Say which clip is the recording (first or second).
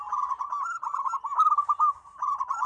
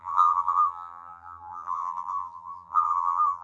first